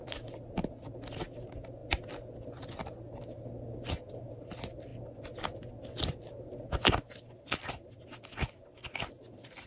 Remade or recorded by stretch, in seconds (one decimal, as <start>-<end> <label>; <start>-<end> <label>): 0.0-9.7 recorded